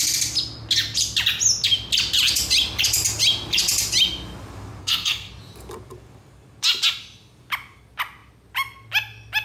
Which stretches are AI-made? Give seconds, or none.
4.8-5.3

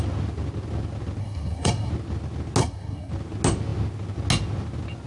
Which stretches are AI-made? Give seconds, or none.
1.2-1.9; 2.6-3.1

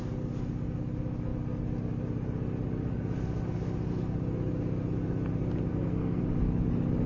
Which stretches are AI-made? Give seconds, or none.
5.7-6.2

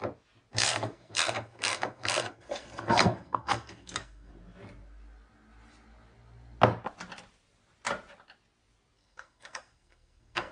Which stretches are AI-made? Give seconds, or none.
0.5-4.3; 9.0-10.5

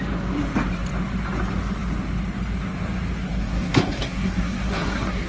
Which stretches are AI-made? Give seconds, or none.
3.4-5.3

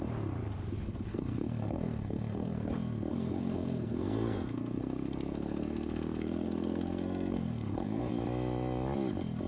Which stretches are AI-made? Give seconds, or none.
1.1-2.7; 3.1-8.1

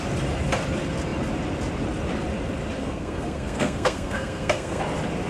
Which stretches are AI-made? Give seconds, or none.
2.8-4.8

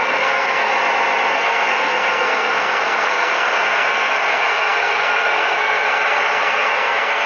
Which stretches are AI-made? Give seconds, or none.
0.0-0.7; 1.3-7.3